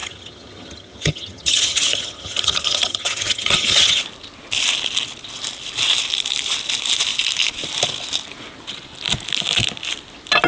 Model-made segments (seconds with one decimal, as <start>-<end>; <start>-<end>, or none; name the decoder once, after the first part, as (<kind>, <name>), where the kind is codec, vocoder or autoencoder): 0.0-4.0 (vocoder, HiFi-GAN)